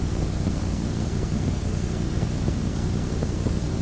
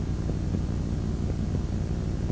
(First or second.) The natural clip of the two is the second